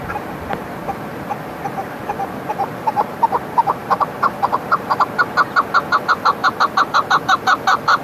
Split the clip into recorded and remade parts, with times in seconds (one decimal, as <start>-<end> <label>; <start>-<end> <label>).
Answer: 0.0-8.0 recorded

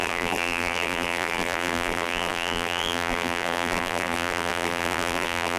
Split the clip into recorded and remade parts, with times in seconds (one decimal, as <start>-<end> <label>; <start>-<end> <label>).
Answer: 0.0-5.6 remade

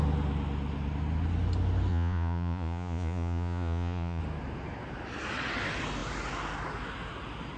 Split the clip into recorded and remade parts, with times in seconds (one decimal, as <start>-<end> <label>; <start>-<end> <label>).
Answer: 0.0-1.9 recorded; 1.9-4.2 remade; 4.2-7.6 recorded

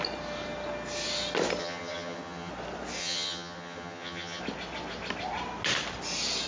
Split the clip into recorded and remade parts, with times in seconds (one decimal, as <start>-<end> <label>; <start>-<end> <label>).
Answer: 0.0-1.6 recorded; 1.6-2.5 remade; 2.5-3.0 recorded; 3.0-4.4 remade; 4.4-6.5 recorded

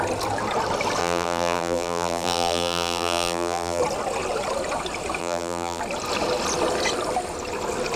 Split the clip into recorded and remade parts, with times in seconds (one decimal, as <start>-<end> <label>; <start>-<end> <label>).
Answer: 0.0-1.0 recorded; 1.0-3.8 remade; 3.8-5.2 recorded; 5.2-5.8 remade; 5.8-8.0 recorded

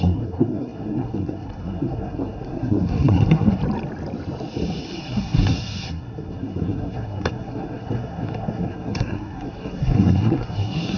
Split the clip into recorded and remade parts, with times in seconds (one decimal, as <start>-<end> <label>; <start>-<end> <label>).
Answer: 0.0-3.6 remade; 3.6-5.0 recorded; 5.0-11.0 remade

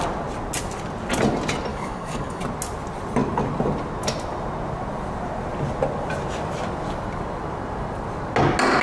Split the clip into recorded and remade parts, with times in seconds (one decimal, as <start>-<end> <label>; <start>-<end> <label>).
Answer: 0.0-1.7 recorded; 1.7-2.4 remade; 2.4-8.8 recorded

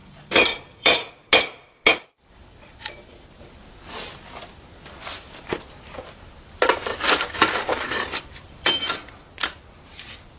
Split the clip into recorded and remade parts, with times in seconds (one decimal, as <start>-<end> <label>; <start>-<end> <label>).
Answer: 0.0-1.1 remade; 1.1-1.9 recorded; 1.9-3.4 remade; 3.4-6.9 recorded; 6.9-8.8 remade; 8.8-10.4 recorded